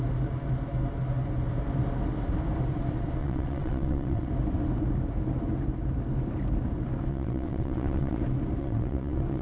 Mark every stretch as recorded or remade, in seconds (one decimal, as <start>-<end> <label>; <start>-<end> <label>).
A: 0.0-3.2 recorded; 3.2-4.3 remade; 4.3-7.1 recorded; 7.1-8.2 remade; 8.2-8.6 recorded; 8.6-9.4 remade